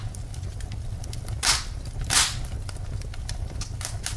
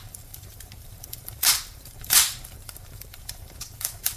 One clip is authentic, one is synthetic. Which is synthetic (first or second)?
second